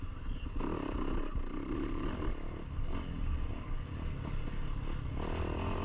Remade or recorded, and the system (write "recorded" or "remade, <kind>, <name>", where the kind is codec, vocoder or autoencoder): recorded